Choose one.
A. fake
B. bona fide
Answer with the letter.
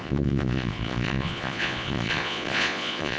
A